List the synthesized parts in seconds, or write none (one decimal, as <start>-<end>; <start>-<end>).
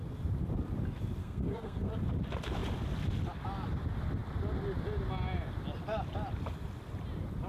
1.2-1.9